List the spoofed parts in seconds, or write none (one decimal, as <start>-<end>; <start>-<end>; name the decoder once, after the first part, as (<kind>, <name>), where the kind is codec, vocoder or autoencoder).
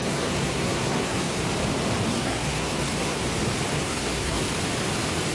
0.0-1.4 (codec, SNAC); 2.1-3.2; 3.7-4.4